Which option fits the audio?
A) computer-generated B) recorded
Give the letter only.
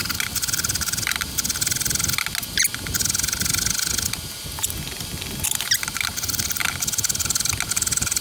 B